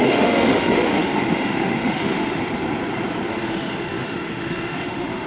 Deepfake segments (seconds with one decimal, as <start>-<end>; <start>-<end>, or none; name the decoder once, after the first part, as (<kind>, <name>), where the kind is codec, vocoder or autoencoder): 0.0-2.4 (autoencoder, DAC-VAE); 3.3-5.3

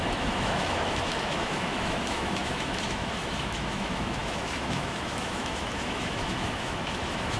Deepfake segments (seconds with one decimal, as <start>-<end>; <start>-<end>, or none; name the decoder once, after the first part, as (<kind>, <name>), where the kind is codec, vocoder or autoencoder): 0.0-7.4 (autoencoder, DAC-VAE)

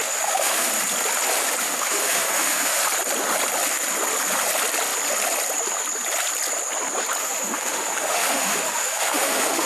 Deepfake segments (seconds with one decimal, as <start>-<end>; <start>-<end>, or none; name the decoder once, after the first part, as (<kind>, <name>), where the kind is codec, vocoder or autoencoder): 0.0-0.7 (autoencoder, DAC-VAE); 1.6-2.8; 7.2-9.7

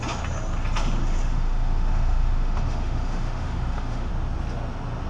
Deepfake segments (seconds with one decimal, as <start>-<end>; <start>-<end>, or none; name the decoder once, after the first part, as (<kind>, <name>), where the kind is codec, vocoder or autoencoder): 1.0-4.1 (autoencoder, DAC-VAE)

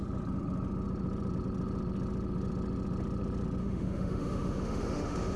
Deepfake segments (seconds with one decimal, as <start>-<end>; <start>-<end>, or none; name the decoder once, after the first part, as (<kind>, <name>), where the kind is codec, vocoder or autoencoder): 3.6-5.4 (autoencoder, DAC-VAE)

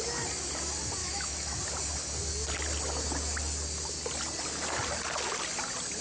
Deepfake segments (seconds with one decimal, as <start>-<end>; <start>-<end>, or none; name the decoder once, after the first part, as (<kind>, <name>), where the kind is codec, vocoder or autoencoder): 1.0-1.6 (autoencoder, DAC-VAE)

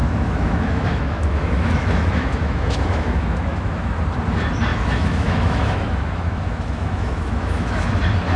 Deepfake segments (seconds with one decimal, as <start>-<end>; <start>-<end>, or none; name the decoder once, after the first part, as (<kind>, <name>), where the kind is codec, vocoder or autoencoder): 0.0-3.9 (autoencoder, DAC-VAE); 4.7-8.0